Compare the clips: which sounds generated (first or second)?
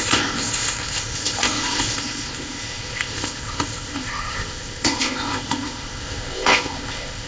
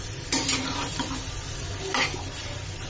first